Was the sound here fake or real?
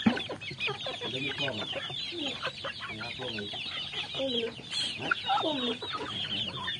real